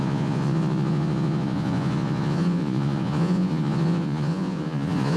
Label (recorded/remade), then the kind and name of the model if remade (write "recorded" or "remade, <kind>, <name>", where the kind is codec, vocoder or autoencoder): remade, vocoder, Vocos